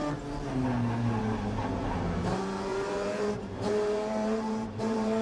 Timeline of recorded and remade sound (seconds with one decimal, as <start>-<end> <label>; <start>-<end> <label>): 0.0-1.2 recorded; 1.2-5.2 remade

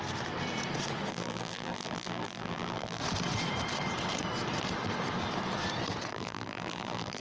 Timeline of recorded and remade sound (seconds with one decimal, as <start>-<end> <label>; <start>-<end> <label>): 0.0-1.1 recorded; 1.1-3.0 remade; 3.0-6.1 recorded; 6.1-7.2 remade

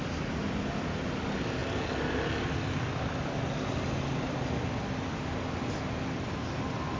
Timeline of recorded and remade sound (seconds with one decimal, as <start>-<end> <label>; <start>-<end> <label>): 0.0-7.0 recorded

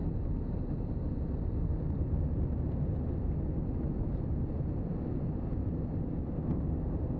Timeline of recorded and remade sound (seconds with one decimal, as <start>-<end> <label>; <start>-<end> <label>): 0.0-0.6 remade; 0.6-7.2 recorded

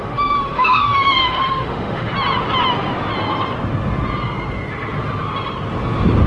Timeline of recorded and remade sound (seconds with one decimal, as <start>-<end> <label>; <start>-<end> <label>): 0.0-2.1 remade; 2.1-6.3 recorded